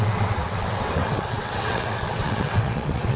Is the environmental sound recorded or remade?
remade